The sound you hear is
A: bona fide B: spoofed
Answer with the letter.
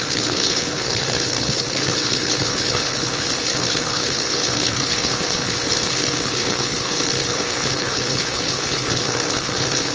B